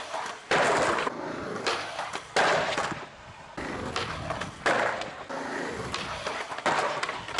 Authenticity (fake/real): real